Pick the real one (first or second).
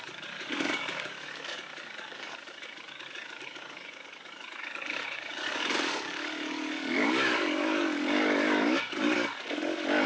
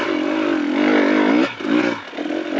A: second